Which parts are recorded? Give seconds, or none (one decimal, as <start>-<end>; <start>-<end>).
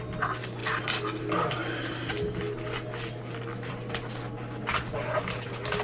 0.0-5.8